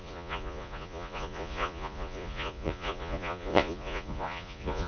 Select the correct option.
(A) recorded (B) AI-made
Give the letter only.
B